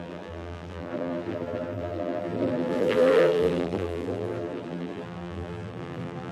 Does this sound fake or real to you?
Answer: fake